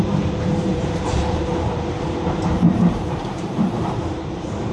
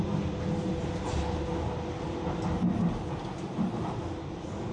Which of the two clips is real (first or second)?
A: second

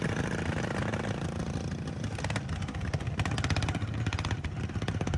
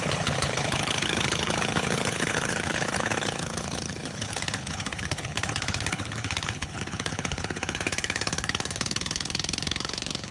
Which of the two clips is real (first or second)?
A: first